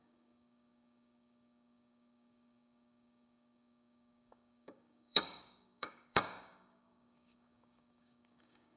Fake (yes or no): yes